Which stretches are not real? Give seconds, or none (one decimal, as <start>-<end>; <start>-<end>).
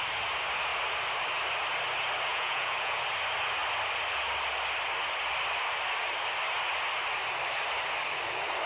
2.3-3.0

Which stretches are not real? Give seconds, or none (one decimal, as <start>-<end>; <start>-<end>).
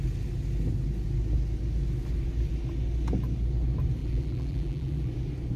4.0-5.1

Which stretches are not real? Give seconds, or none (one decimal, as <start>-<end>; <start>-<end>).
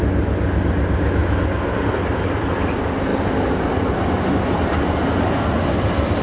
none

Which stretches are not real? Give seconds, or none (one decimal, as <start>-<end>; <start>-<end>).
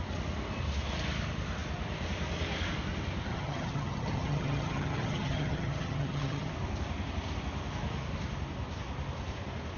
3.3-6.5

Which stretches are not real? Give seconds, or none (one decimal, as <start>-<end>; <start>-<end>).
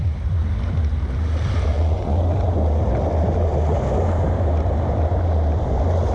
1.7-2.2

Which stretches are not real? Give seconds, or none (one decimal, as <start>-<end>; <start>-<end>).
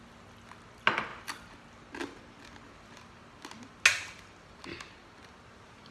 none